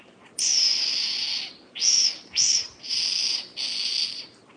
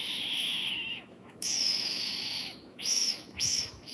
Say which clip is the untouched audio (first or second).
first